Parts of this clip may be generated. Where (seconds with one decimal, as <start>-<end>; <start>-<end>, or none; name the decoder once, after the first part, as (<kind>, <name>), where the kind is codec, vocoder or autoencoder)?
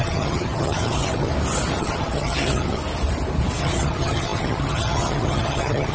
0.0-1.3 (vocoder, HiFi-GAN); 1.8-2.8; 3.6-5.9